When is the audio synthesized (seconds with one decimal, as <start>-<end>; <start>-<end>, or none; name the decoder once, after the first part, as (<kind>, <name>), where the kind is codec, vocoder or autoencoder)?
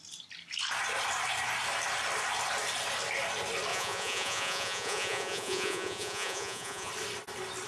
3.7-6.9 (vocoder, Vocos)